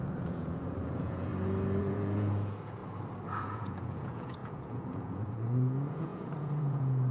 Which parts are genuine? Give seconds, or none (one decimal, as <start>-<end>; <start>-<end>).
1.3-1.8; 2.8-3.4

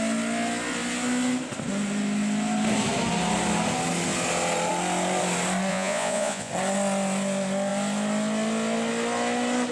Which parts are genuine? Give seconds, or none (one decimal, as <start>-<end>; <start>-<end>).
0.0-5.7; 6.5-9.7

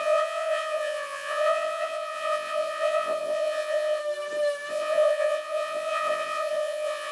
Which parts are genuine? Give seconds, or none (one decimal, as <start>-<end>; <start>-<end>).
4.0-4.7

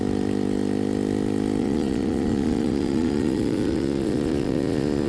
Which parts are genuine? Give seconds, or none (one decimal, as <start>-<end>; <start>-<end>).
0.0-1.6

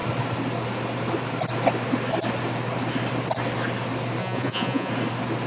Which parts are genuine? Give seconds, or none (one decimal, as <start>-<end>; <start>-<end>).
0.0-4.2; 4.9-5.5

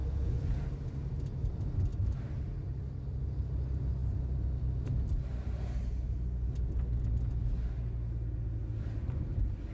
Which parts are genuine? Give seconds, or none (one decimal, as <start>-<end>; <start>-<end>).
0.7-9.7

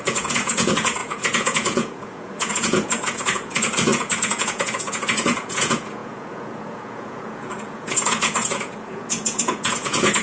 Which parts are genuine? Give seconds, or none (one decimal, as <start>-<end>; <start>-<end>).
none